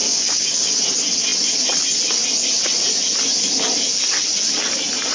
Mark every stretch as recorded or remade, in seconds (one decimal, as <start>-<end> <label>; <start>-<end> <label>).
0.0-0.7 remade; 0.7-5.1 recorded